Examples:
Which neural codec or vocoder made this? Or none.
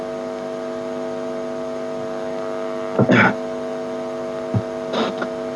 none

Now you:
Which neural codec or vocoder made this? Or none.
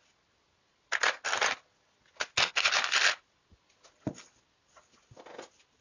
none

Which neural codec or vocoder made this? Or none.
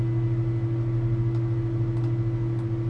none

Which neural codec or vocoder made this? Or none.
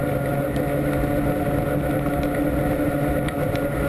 none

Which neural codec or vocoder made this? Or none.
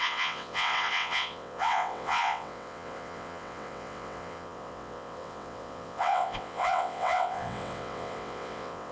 vocoder, WaveNeXt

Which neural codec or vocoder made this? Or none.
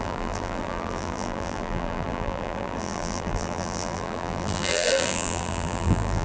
vocoder, BigVGAN v2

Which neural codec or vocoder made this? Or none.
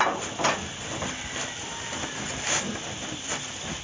none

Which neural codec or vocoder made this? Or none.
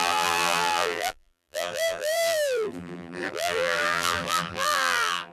vocoder, BigVGAN v2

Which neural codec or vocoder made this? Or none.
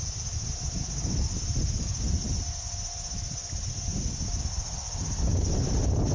none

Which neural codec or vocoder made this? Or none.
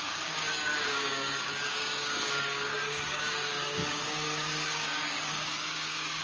codec, DAC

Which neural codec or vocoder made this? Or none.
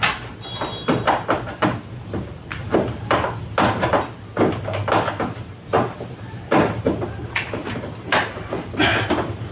none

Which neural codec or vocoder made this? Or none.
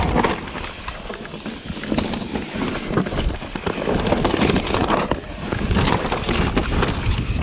none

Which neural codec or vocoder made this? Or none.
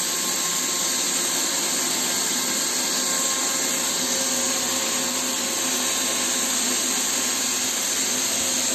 none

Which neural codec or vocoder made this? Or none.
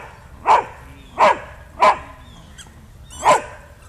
none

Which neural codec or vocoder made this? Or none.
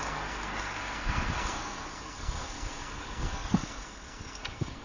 codec, SNAC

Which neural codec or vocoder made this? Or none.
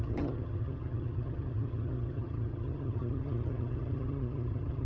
vocoder, HiFi-GAN